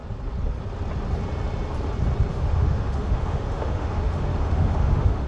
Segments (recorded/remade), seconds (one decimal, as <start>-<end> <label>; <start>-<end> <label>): 0.0-2.3 recorded; 2.3-5.3 remade